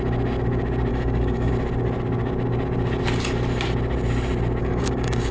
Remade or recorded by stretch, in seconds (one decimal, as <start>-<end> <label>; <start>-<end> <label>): 0.0-0.9 recorded; 0.9-1.5 remade; 1.5-4.6 recorded; 4.6-5.3 remade

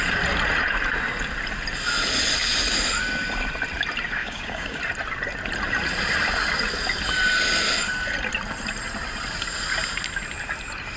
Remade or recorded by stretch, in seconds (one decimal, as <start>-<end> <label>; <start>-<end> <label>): 0.0-4.2 recorded; 4.2-4.8 remade; 4.8-11.0 recorded

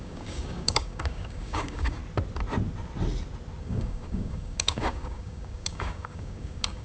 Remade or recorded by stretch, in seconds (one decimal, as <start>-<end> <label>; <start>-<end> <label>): 0.0-2.0 remade; 2.0-3.6 recorded; 3.6-6.8 remade

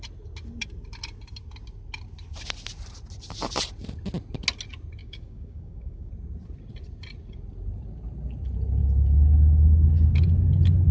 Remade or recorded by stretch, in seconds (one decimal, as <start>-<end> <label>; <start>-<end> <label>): 0.0-5.0 recorded; 5.0-6.1 remade; 6.1-10.9 recorded

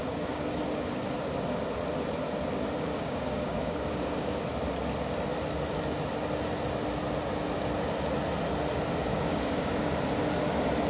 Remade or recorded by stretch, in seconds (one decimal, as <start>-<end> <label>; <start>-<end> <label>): 0.0-0.6 remade; 0.6-2.9 recorded; 2.9-4.4 remade; 4.4-9.1 recorded; 9.1-9.9 remade; 9.9-10.9 recorded

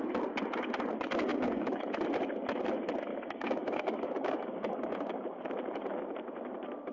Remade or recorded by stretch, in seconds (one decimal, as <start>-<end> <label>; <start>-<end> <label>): 0.0-1.3 recorded; 1.3-1.8 remade; 1.8-3.1 recorded; 3.1-5.5 remade; 5.5-6.9 recorded

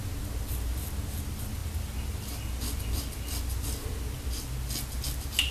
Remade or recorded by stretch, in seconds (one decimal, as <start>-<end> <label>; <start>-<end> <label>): 0.0-5.5 recorded

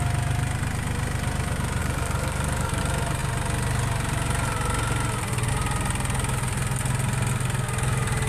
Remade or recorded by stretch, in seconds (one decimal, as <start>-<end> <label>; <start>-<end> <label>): 0.0-1.8 recorded; 1.8-2.8 remade; 2.8-8.3 recorded